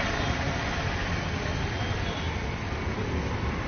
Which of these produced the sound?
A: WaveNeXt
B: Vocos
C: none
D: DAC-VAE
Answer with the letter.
C